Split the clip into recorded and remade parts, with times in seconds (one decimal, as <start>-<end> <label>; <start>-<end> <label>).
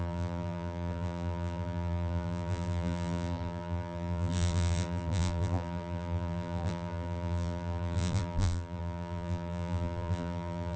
0.0-10.8 remade